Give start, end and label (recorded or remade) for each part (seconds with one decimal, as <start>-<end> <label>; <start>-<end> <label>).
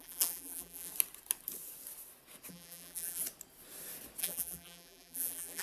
0.0-0.9 remade; 0.9-2.5 recorded; 2.5-3.2 remade; 3.2-4.2 recorded; 4.2-5.6 remade